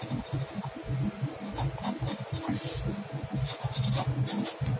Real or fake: real